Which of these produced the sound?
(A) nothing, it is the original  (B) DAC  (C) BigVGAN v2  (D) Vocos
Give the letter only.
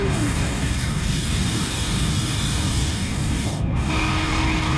B